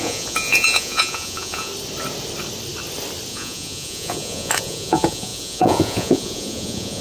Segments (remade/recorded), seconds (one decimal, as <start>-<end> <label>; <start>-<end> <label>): 0.0-1.7 remade; 1.7-3.3 recorded; 3.3-7.0 remade